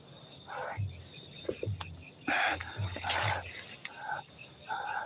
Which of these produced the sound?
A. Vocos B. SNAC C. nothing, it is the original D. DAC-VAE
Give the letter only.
C